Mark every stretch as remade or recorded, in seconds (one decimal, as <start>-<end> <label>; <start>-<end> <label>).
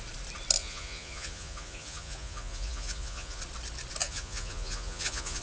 0.0-0.6 recorded; 0.6-3.4 remade; 3.4-4.0 recorded; 4.0-5.4 remade